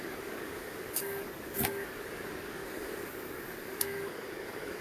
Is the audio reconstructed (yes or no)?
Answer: yes